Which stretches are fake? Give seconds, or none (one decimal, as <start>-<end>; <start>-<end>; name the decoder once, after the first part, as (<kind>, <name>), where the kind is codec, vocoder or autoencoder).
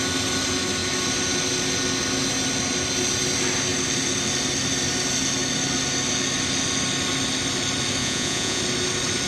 8.0-8.6 (vocoder, Vocos)